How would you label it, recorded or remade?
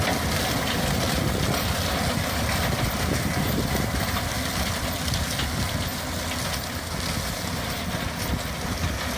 recorded